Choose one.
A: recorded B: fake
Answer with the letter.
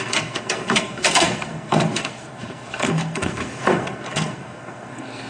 B